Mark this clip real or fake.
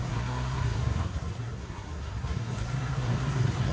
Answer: fake